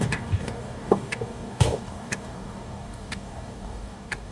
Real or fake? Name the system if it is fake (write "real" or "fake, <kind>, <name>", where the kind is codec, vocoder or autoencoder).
fake, codec, DAC